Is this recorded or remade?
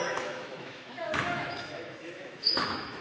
remade